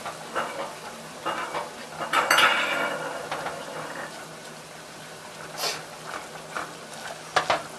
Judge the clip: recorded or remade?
recorded